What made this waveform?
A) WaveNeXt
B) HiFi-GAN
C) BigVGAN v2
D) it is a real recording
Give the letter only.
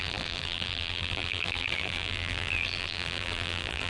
C